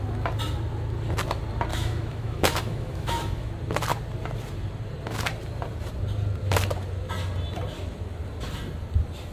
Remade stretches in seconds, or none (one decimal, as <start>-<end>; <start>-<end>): 1.7-3.5